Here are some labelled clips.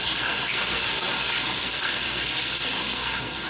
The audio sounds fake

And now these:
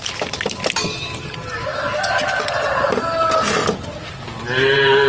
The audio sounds real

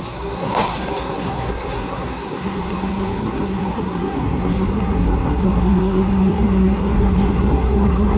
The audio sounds fake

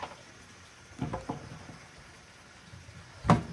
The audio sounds real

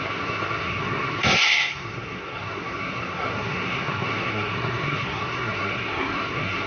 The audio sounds fake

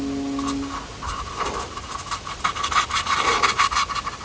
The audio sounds real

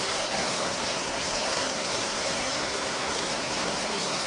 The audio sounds fake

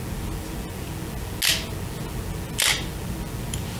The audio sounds real